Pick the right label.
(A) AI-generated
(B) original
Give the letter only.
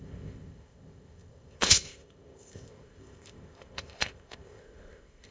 A